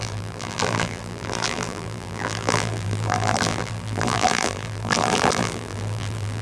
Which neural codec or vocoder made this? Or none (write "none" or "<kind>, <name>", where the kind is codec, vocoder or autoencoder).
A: vocoder, BigVGAN v2